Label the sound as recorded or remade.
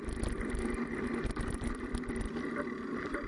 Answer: recorded